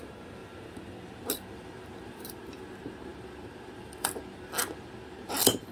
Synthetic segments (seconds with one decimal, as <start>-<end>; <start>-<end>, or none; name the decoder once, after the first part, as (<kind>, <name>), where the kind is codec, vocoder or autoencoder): 0.4-2.4 (vocoder, BigVGAN v2); 3.1-4.2